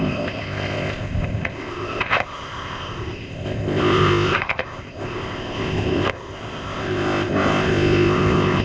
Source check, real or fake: fake